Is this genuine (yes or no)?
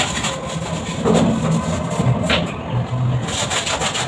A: yes